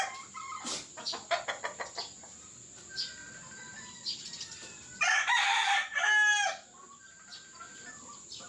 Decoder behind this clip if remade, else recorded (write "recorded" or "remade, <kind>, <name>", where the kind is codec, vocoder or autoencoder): recorded